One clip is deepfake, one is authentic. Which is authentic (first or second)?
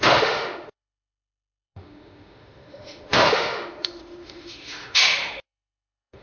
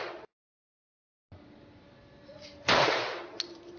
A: second